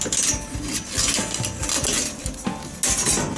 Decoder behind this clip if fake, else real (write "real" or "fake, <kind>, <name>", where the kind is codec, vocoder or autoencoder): real